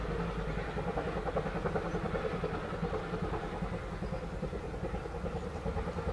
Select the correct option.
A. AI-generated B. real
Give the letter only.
B